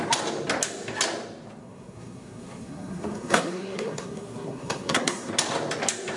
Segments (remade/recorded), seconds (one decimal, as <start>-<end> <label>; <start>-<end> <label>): 0.0-1.6 recorded; 1.6-5.3 remade; 5.3-6.2 recorded